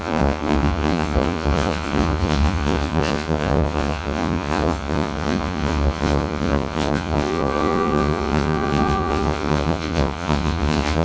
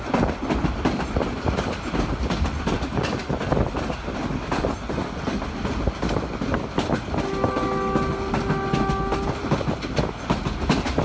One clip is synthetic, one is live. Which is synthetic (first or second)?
first